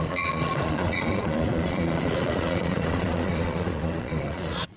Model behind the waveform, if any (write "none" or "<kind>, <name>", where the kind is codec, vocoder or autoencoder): vocoder, Vocos